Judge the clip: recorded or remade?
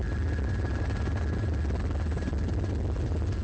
recorded